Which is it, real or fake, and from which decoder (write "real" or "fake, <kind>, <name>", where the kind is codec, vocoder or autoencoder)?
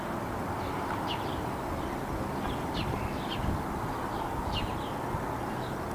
real